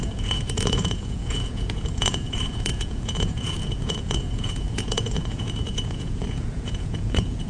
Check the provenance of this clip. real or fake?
fake